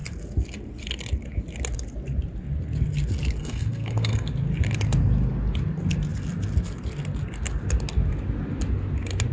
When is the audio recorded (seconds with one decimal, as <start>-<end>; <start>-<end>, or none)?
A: 0.0-3.4; 4.3-9.3